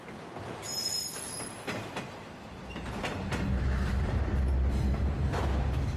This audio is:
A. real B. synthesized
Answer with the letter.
A